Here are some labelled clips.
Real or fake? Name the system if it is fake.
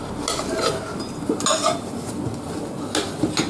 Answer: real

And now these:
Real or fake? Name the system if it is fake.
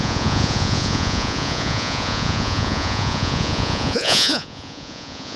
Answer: fake, vocoder, Vocos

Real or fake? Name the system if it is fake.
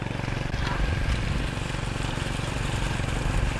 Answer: real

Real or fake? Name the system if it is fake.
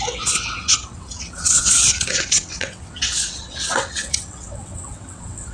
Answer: fake, vocoder, WaveNeXt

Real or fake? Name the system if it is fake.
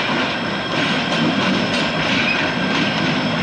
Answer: real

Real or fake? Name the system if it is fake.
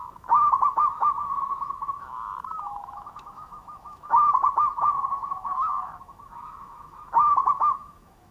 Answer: fake, autoencoder, DAC-VAE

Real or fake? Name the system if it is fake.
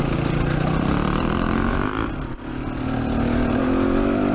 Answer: real